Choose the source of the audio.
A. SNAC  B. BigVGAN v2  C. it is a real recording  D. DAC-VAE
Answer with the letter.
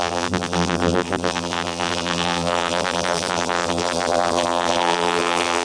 B